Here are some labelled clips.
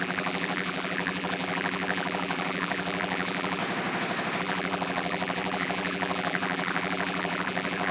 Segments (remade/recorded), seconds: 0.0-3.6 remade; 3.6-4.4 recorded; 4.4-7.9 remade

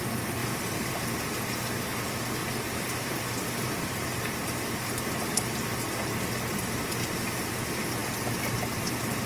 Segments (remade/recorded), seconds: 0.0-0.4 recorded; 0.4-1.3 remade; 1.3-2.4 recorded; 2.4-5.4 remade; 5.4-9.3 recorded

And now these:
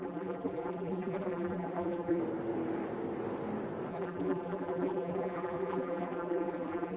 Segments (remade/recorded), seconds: 0.0-2.2 remade; 2.2-3.9 recorded; 3.9-7.0 remade

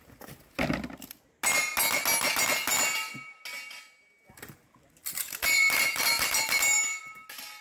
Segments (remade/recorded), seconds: 0.0-5.0 recorded; 5.0-7.0 remade; 7.0-7.6 recorded